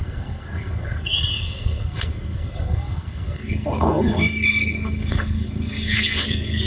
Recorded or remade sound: remade